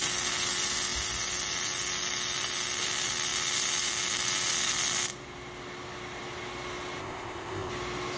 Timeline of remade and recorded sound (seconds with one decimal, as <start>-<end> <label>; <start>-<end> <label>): 0.0-7.0 recorded; 7.0-7.7 remade; 7.7-8.2 recorded